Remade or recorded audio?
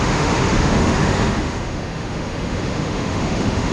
remade